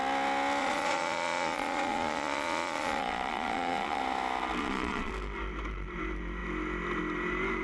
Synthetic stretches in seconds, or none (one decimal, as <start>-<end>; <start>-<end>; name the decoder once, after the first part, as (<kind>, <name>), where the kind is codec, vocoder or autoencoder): 0.6-4.0 (vocoder, Vocos); 4.6-5.1